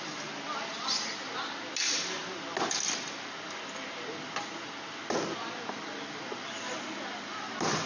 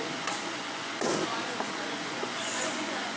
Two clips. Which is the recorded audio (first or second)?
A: first